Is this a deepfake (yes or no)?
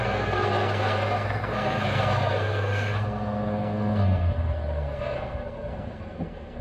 yes